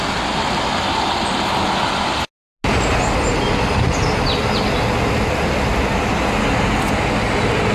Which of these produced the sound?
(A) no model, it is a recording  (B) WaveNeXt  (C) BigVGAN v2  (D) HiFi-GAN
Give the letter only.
A